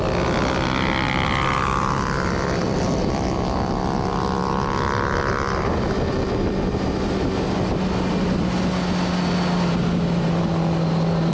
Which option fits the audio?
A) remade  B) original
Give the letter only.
B